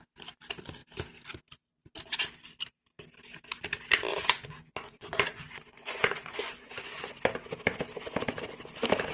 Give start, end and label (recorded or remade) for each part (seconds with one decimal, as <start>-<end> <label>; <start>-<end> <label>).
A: 0.0-4.1 recorded; 4.1-7.2 remade; 7.2-9.1 recorded